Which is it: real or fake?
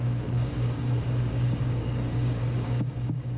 fake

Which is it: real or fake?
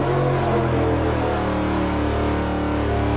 real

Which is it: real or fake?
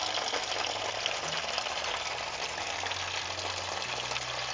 real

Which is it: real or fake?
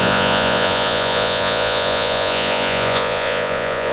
fake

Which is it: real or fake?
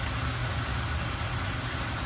real